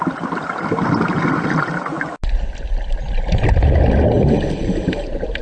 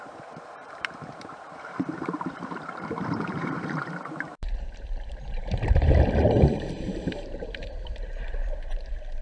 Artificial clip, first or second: second